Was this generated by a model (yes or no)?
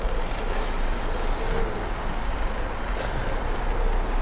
no